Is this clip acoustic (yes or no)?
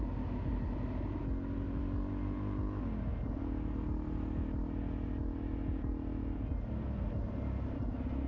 yes